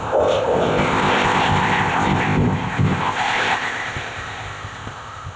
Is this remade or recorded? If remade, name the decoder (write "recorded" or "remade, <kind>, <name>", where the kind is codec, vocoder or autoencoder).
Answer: remade, codec, ZipCodec